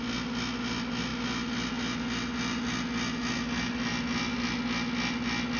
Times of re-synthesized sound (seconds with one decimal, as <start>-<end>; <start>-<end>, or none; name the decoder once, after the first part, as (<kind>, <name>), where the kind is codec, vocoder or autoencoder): none